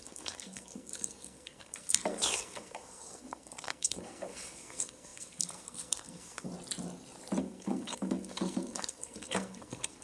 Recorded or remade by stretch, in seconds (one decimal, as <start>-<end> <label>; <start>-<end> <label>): 0.0-6.5 remade; 6.5-7.4 recorded; 7.4-10.0 remade